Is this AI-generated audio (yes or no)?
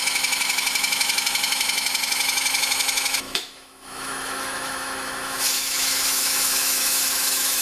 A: yes